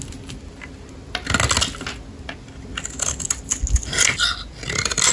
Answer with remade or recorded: recorded